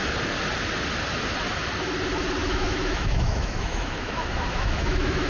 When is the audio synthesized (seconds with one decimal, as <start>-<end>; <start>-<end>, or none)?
2.4-5.3